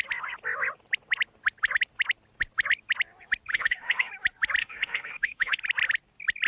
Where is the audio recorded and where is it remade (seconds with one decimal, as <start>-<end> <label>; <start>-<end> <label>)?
0.0-3.5 recorded; 3.5-4.1 remade; 4.1-4.6 recorded; 4.6-5.6 remade; 5.6-6.5 recorded